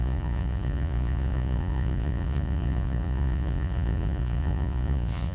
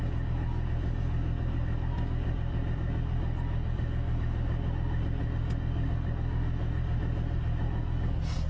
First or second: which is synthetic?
first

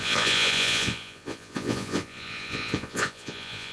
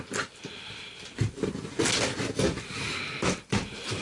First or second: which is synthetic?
first